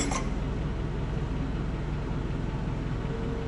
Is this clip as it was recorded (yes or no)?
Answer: yes